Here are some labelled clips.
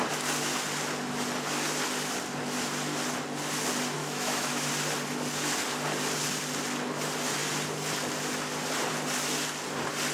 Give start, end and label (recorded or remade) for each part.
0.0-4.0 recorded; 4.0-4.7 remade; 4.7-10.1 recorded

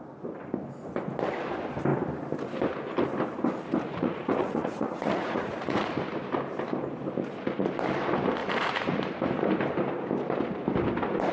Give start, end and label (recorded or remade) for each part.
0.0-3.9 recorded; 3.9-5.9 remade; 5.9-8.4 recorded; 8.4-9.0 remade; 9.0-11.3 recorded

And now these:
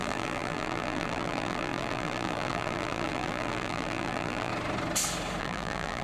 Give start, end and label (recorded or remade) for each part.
0.0-4.5 remade; 4.5-5.4 recorded; 5.4-6.0 remade